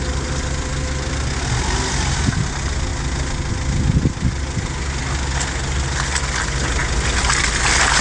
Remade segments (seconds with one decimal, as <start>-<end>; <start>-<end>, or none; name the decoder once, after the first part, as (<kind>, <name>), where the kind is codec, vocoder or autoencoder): none